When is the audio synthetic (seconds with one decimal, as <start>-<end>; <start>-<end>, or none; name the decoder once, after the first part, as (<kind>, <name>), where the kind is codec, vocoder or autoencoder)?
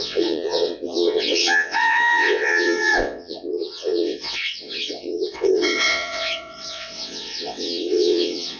0.0-8.6 (vocoder, WaveNeXt)